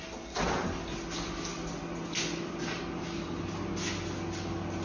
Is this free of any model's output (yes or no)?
yes